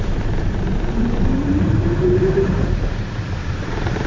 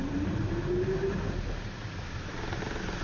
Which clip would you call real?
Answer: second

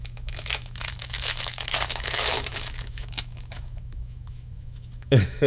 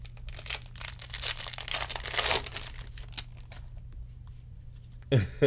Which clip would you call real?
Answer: second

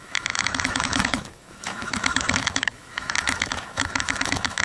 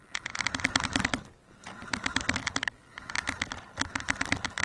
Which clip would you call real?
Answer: second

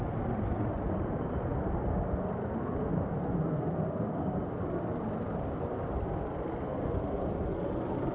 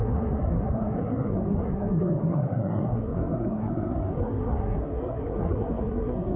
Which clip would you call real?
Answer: first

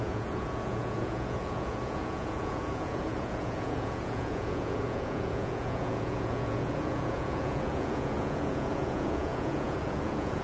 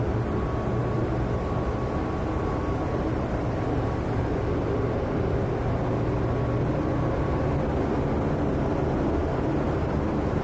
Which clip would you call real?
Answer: second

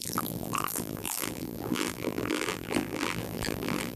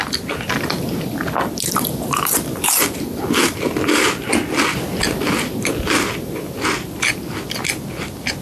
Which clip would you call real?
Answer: second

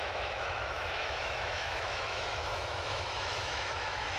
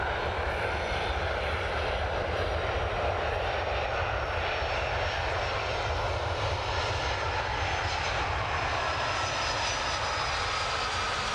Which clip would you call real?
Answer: second